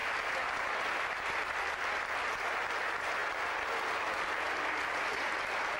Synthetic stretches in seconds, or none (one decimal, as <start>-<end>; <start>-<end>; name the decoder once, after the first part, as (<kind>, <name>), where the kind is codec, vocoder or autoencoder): none